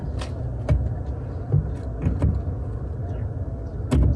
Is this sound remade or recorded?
recorded